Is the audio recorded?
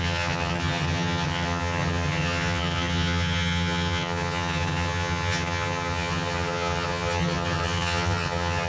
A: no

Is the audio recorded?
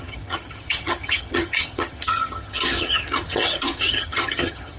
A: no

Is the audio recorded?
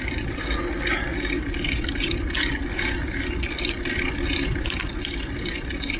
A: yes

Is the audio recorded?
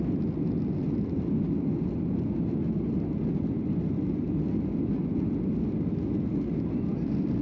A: yes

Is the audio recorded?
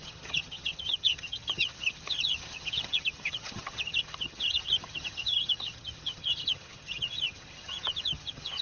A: no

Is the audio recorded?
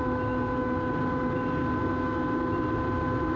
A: yes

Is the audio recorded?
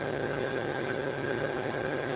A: no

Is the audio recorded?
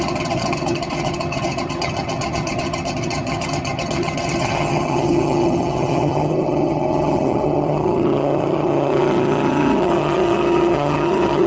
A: no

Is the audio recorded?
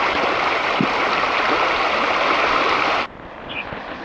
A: yes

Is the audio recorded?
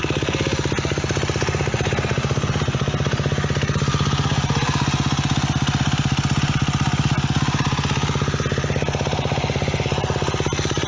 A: yes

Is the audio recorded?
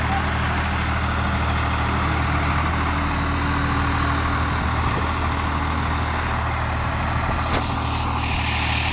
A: yes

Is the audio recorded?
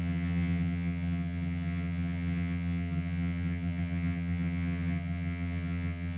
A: no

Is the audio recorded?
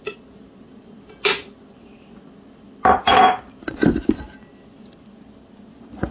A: yes